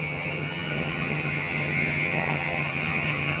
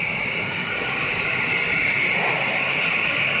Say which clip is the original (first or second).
second